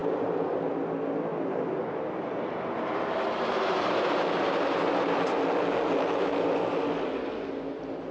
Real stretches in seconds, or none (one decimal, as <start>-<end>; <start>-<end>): 0.7-1.3; 5.2-8.1